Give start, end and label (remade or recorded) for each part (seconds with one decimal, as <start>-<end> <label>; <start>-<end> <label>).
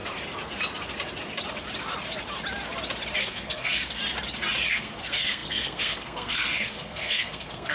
0.0-3.2 recorded; 3.2-4.0 remade; 4.0-4.7 recorded; 4.7-7.7 remade